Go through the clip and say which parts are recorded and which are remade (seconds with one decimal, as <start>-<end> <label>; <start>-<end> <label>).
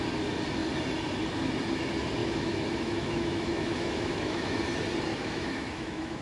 0.0-2.2 recorded; 2.2-4.6 remade; 4.6-5.1 recorded; 5.1-6.2 remade